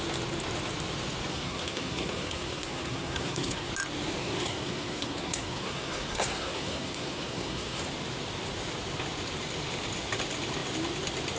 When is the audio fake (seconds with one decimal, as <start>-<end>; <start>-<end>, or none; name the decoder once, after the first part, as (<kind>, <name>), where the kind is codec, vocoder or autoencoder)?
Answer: 1.3-3.7 (codec, SNAC); 4.2-7.8